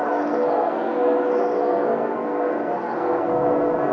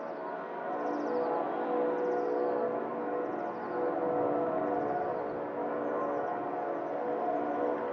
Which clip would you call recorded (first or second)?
second